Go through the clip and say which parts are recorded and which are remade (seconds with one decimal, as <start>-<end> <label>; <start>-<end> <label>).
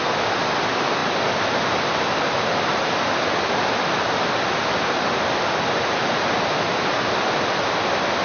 0.0-8.2 recorded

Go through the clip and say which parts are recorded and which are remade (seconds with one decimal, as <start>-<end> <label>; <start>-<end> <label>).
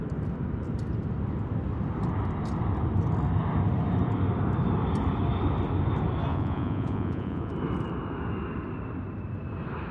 0.0-6.3 recorded; 6.3-7.5 remade; 7.5-9.9 recorded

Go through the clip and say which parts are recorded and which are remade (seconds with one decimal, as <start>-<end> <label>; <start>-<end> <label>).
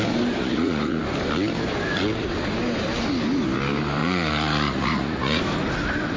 0.0-0.4 recorded; 0.4-1.0 remade; 1.0-4.0 recorded; 4.0-5.4 remade; 5.4-6.2 recorded